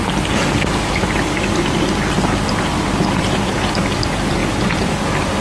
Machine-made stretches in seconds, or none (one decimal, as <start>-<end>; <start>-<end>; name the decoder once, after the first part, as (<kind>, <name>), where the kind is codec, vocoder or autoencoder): none